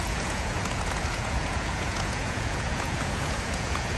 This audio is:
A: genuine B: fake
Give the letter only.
B